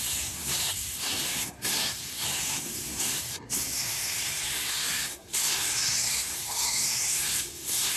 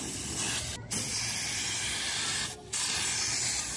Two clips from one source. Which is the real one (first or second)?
second